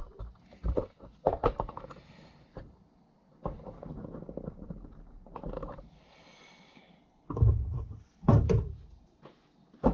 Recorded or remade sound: recorded